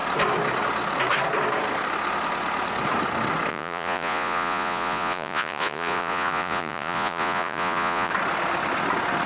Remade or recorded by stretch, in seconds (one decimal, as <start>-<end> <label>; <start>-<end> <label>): 0.0-3.5 recorded; 3.5-8.1 remade; 8.1-9.3 recorded